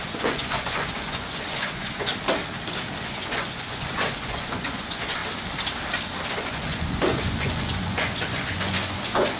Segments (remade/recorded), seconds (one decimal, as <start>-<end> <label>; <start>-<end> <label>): 0.0-2.1 remade; 2.1-3.0 recorded; 3.0-5.2 remade; 5.2-6.3 recorded; 6.3-9.4 remade